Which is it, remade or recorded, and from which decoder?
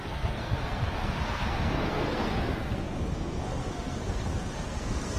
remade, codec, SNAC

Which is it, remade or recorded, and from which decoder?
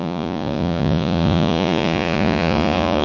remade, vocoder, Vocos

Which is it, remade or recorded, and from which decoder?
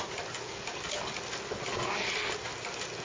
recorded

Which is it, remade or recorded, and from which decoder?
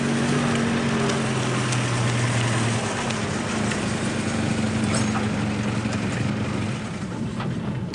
recorded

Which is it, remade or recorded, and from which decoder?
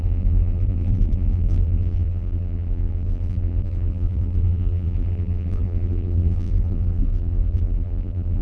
remade, vocoder, BigVGAN v2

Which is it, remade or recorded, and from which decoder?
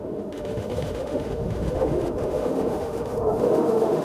remade, autoencoder, DAC-VAE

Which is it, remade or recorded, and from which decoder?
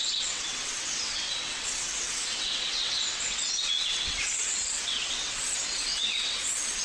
remade, vocoder, WaveNeXt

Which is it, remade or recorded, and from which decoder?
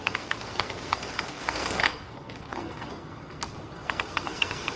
remade, codec, SNAC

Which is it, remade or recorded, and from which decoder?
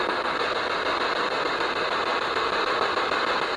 recorded